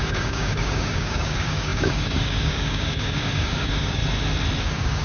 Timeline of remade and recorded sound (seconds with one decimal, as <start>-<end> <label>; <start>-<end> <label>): 0.0-4.0 remade; 4.0-4.6 recorded; 4.6-5.0 remade